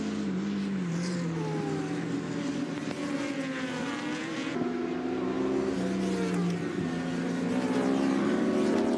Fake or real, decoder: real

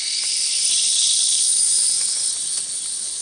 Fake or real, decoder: fake, codec, HILCodec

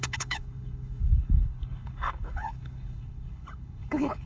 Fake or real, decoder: fake, codec, HILCodec